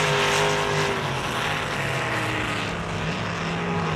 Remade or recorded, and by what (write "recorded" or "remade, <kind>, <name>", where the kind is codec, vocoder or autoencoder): recorded